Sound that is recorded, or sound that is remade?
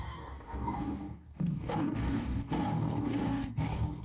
remade